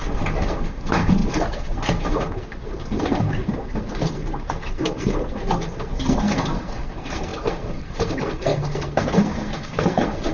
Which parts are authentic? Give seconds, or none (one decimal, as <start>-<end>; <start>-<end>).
none